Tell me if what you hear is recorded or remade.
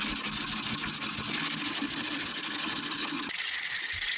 recorded